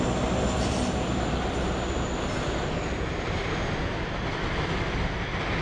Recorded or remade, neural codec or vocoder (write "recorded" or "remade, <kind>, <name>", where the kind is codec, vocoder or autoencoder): recorded